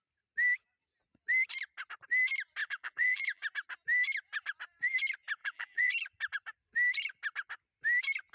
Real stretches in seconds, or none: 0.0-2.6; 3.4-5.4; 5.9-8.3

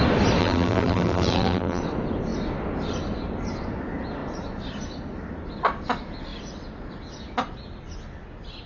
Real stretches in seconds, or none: 0.0-0.4; 1.8-8.7

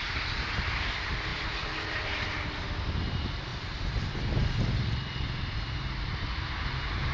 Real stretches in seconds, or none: 0.0-3.5; 4.7-7.1

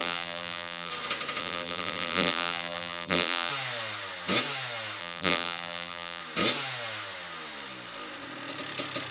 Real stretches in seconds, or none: 0.9-1.4; 3.5-5.0; 6.2-9.1

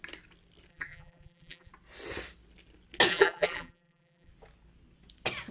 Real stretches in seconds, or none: 0.0-0.7; 1.7-3.1; 4.3-5.5

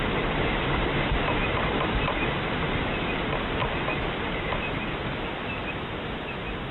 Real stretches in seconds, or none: 0.0-3.6; 4.6-6.7

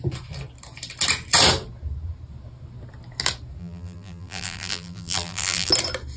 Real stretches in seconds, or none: 0.0-3.6; 5.7-6.2